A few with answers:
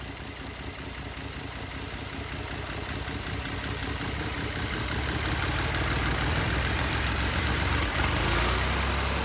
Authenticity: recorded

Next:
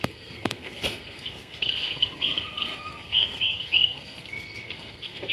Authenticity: remade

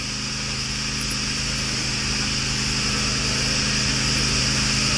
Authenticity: recorded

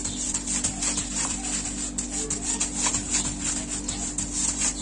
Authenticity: recorded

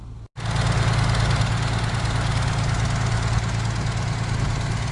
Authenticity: recorded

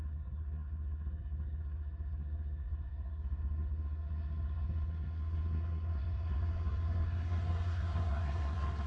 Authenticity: remade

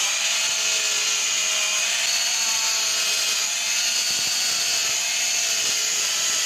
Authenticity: recorded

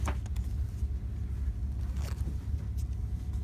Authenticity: recorded